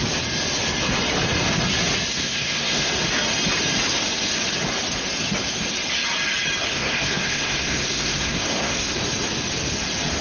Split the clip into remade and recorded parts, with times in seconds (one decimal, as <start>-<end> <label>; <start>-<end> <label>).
0.0-2.1 recorded; 2.1-2.9 remade; 2.9-6.7 recorded; 6.7-9.0 remade; 9.0-10.2 recorded